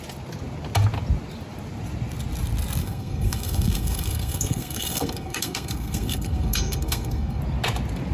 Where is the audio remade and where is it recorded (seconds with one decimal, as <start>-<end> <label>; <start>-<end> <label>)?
0.0-2.8 recorded; 2.8-7.4 remade; 7.4-8.1 recorded

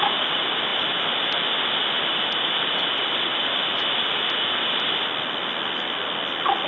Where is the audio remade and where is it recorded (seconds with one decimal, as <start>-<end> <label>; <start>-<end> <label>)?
0.0-6.7 recorded

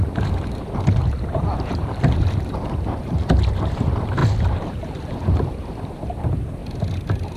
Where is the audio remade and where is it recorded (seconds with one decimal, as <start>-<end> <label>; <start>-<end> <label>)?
0.0-6.6 remade; 6.6-7.4 recorded

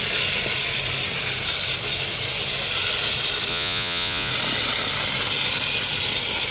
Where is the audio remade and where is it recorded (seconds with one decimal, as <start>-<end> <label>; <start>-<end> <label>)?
0.0-3.5 recorded; 3.5-4.3 remade; 4.3-6.5 recorded

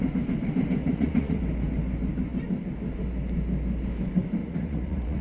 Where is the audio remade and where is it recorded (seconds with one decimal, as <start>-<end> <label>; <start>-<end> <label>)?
0.0-0.8 recorded; 0.8-1.4 remade; 1.4-4.4 recorded; 4.4-5.2 remade

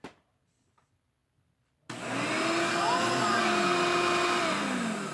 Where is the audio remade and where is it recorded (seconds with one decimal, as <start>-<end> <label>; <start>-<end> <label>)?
0.0-5.1 recorded

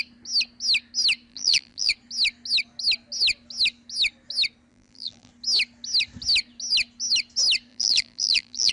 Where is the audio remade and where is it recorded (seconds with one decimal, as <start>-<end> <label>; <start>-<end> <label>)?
0.0-1.3 recorded; 1.3-1.9 remade; 1.9-4.7 recorded; 4.7-5.3 remade; 5.3-7.7 recorded; 7.7-8.7 remade

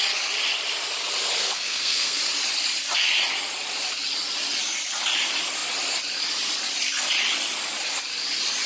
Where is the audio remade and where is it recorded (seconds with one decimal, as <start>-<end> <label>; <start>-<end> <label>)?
0.0-1.4 recorded; 1.4-2.2 remade; 2.2-8.7 recorded